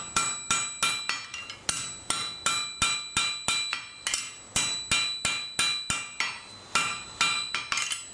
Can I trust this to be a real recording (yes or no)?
yes